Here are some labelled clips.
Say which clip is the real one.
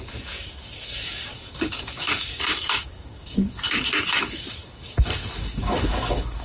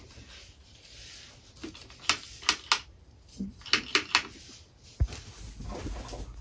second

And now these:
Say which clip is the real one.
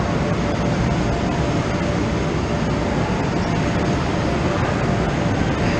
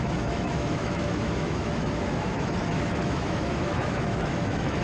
first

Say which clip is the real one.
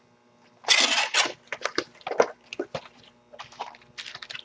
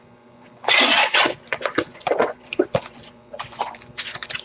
first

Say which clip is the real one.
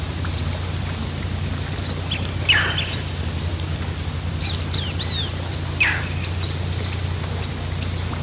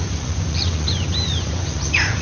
first